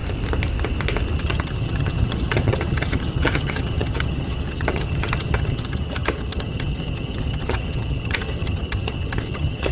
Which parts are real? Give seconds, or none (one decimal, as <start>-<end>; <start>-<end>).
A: 0.0-1.2